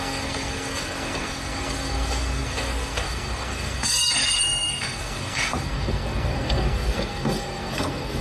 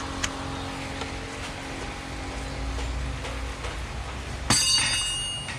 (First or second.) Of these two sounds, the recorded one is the second